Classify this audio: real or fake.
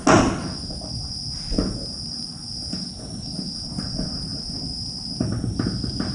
real